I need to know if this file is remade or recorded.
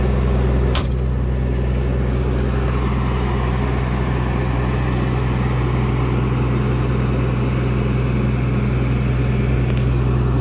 recorded